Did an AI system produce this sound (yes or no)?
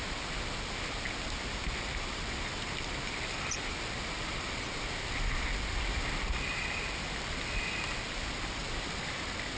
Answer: no